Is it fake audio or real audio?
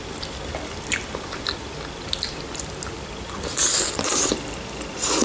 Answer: real